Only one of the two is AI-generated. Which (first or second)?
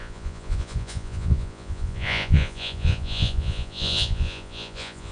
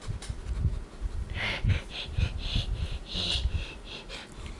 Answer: first